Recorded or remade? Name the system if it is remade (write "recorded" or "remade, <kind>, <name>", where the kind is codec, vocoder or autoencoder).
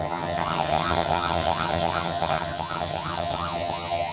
remade, vocoder, HiFi-GAN